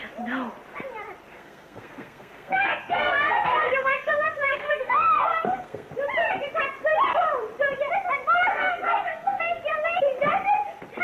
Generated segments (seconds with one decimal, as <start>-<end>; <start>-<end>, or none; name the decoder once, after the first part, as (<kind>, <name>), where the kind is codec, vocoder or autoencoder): 1.3-5.9 (codec, SNAC); 8.5-9.6